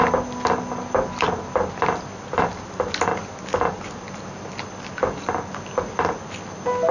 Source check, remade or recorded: recorded